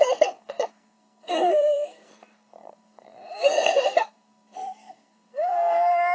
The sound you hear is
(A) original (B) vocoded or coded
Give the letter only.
B